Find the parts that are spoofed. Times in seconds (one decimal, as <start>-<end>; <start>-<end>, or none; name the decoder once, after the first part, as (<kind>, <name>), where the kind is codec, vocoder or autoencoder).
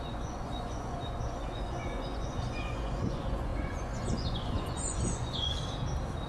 0.0-5.6 (vocoder, Vocos)